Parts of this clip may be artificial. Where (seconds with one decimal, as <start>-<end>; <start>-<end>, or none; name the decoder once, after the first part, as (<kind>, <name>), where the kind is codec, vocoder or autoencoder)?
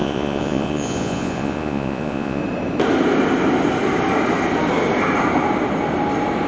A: 0.0-2.4 (vocoder, Vocos)